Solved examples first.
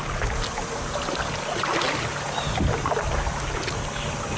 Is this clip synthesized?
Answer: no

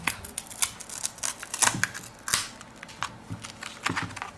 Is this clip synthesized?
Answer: no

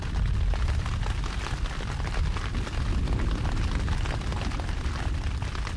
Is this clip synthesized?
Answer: no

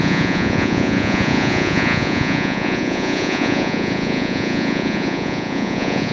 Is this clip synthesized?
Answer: yes